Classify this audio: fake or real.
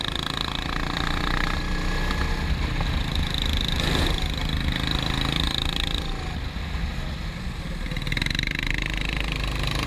real